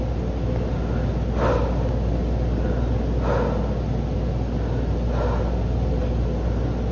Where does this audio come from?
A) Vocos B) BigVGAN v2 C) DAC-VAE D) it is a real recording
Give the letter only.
D